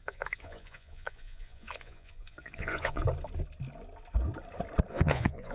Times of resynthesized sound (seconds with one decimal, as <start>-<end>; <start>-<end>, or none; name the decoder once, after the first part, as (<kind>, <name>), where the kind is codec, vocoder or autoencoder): 0.0-3.0 (vocoder, Vocos); 4.9-5.5